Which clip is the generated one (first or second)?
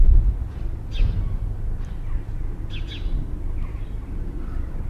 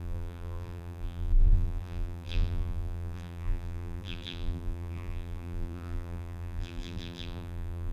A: second